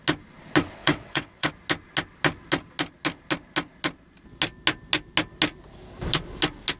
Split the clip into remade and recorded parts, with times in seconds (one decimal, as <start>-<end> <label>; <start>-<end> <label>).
0.0-0.8 recorded; 0.8-1.5 remade; 1.5-6.8 recorded